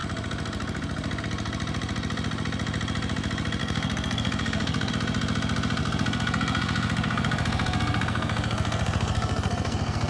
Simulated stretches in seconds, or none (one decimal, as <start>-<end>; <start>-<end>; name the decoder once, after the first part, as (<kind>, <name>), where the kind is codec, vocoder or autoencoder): 3.6-4.9 (codec, SNAC); 5.8-10.1